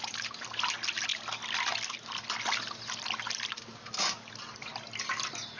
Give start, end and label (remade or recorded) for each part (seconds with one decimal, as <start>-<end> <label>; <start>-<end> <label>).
0.0-5.6 recorded

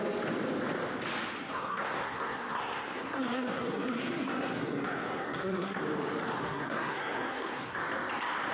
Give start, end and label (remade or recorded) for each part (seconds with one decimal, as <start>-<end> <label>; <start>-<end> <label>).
0.0-1.4 recorded; 1.4-5.8 remade; 5.8-6.4 recorded; 6.4-7.8 remade; 7.8-8.5 recorded

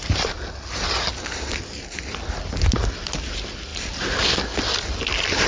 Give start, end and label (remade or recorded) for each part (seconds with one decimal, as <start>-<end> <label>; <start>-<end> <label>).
0.0-5.5 recorded

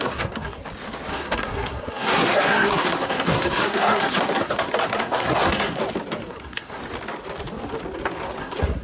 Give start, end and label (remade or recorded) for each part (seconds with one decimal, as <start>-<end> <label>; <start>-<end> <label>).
0.0-0.6 remade; 0.6-1.1 recorded; 1.1-5.8 remade; 5.8-6.3 recorded; 6.3-6.8 remade; 6.8-8.4 recorded; 8.4-8.8 remade

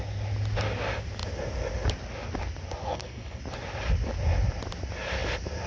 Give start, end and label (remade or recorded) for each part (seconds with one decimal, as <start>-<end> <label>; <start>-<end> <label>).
0.0-2.8 recorded; 2.8-3.4 remade; 3.4-5.7 recorded